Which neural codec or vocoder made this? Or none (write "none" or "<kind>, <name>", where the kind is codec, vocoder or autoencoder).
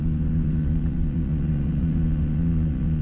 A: vocoder, Vocos